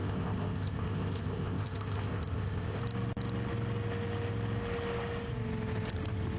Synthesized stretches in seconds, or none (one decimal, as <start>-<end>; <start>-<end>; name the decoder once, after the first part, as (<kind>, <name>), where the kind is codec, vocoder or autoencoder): 0.0-2.8 (codec, ZipCodec)